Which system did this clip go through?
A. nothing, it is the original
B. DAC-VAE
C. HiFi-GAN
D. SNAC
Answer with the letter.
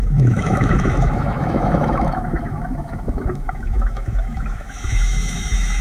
B